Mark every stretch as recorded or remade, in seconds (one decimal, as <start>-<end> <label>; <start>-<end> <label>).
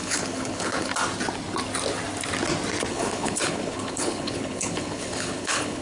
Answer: 0.0-0.9 remade; 0.9-2.9 recorded; 2.9-5.8 remade